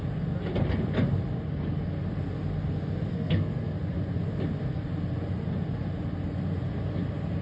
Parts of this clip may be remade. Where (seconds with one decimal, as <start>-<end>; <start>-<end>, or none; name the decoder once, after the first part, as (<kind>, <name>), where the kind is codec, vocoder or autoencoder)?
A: 3.1-3.8 (codec, SNAC)